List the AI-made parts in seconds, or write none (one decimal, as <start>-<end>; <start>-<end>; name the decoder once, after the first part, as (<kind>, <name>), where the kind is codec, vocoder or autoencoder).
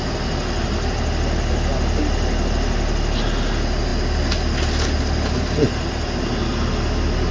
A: none